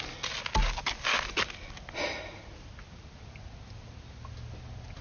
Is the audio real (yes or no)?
yes